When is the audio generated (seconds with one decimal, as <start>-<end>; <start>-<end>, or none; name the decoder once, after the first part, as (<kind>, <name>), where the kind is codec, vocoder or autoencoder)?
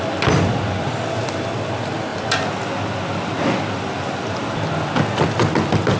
none